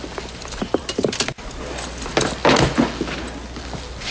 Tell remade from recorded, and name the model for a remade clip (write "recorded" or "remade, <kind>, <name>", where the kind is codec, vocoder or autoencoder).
recorded